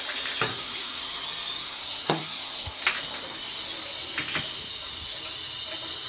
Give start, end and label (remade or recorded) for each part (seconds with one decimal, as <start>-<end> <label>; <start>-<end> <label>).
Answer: 0.0-0.5 recorded; 0.5-1.0 remade; 1.0-1.6 recorded; 1.6-2.8 remade; 2.8-6.1 recorded